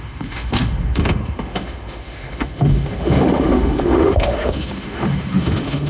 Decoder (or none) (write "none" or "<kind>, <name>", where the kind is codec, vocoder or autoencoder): autoencoder, DAC-VAE